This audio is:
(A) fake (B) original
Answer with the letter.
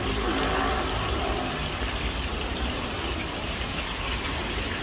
B